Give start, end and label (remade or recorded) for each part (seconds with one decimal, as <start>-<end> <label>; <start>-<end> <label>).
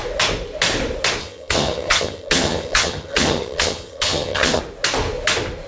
0.0-1.2 recorded; 1.2-4.6 remade; 4.6-5.7 recorded